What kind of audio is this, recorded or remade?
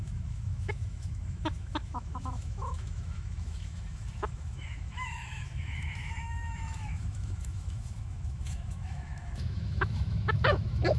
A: remade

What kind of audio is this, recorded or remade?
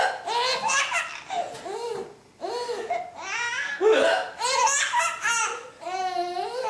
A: recorded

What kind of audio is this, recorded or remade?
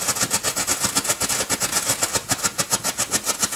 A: recorded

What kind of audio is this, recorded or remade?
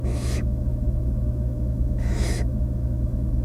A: remade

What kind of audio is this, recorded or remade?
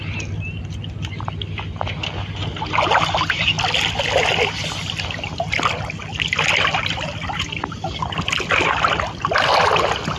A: recorded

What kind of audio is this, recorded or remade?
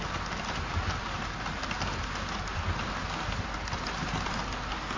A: recorded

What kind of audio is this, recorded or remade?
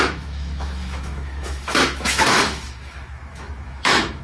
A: remade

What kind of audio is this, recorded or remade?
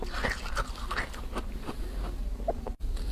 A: recorded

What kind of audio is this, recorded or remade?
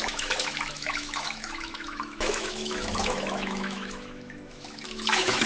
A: remade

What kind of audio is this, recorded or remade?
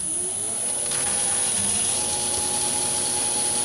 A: recorded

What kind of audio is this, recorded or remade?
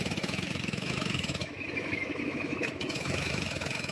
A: remade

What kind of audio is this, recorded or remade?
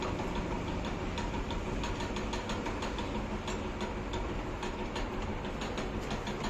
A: recorded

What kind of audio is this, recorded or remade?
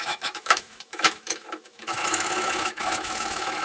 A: remade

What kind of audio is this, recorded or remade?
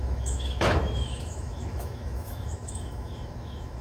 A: remade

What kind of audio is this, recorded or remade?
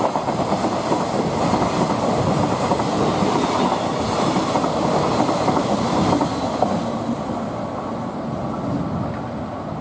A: recorded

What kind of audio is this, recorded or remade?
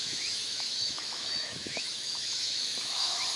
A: remade